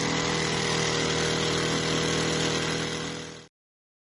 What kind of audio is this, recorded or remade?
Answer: recorded